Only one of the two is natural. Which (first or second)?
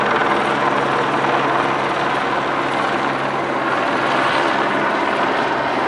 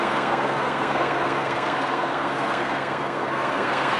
first